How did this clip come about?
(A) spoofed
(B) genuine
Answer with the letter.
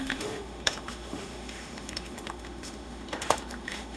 A